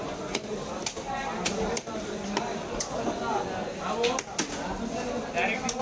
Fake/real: real